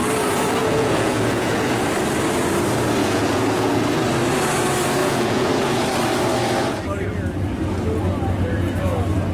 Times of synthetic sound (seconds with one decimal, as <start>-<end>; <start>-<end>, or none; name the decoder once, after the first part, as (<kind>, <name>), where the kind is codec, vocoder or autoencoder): 0.6-1.8 (vocoder, Vocos); 3.0-3.8; 5.0-5.8